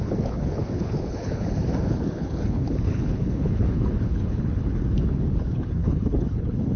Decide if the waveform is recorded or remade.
remade